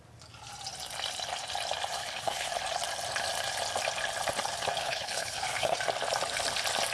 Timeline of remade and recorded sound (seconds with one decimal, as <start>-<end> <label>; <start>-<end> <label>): 0.0-2.0 recorded; 2.0-2.5 remade; 2.5-4.8 recorded; 4.8-5.8 remade; 5.8-6.9 recorded